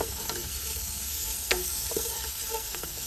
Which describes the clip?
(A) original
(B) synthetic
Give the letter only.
B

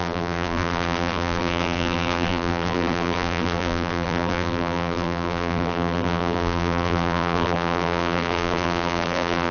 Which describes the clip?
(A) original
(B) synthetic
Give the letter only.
B